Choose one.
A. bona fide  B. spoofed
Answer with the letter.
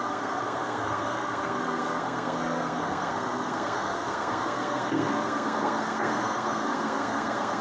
B